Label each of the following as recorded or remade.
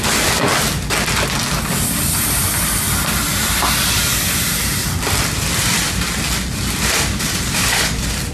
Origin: recorded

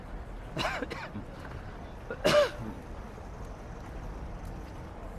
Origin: recorded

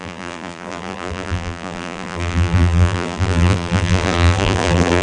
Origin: remade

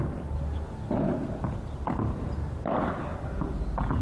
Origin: recorded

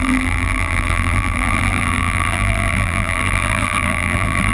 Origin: remade